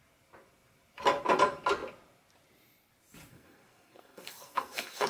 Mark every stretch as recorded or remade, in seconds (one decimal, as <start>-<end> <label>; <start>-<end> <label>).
0.0-3.3 recorded; 3.3-5.1 remade